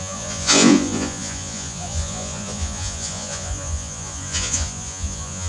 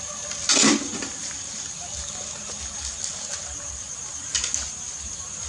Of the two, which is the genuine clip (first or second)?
second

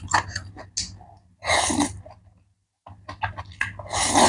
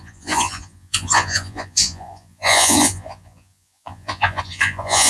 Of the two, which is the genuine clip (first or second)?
first